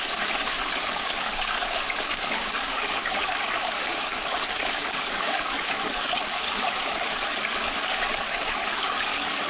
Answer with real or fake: fake